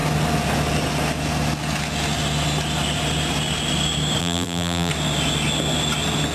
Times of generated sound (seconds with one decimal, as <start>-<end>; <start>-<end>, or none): 4.2-4.9